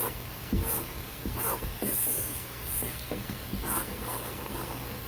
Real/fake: fake